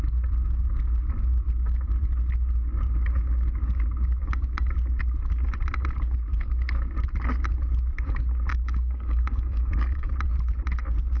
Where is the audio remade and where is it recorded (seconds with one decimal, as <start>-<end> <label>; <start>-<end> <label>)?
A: 0.0-8.5 recorded; 8.5-10.1 remade; 10.1-11.2 recorded